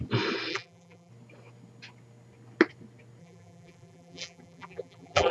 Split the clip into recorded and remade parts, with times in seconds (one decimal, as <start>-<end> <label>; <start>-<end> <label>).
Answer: 0.0-0.5 recorded; 0.5-1.1 remade; 1.1-3.2 recorded; 3.2-5.3 remade